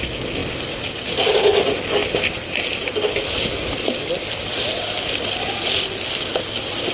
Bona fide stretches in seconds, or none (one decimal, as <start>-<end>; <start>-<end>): 0.0-6.9